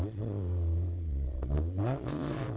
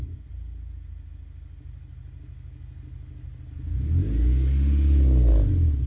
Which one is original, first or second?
second